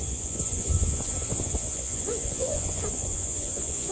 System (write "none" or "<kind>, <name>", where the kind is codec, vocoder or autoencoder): vocoder, Vocos